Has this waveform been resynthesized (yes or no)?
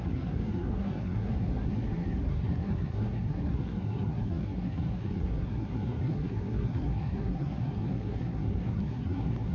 yes